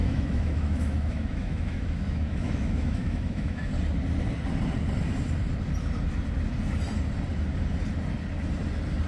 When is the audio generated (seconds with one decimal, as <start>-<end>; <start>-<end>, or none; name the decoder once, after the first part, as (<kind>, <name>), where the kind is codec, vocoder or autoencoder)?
0.0-3.7 (autoencoder, DAC-VAE)